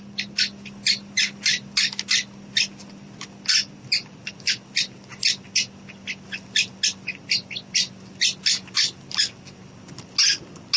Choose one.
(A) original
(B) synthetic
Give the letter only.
A